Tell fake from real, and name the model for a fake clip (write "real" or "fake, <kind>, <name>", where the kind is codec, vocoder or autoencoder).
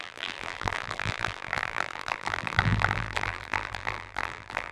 fake, vocoder, BigVGAN v2